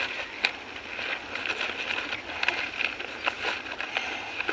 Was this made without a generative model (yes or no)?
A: yes